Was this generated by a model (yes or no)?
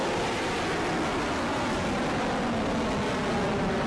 no